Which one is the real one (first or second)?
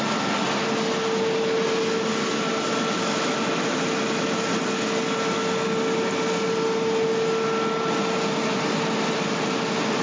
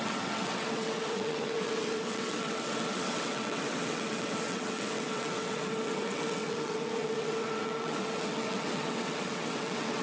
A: first